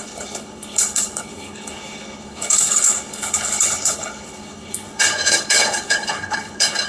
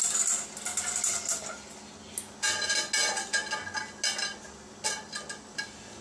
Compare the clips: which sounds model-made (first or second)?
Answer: first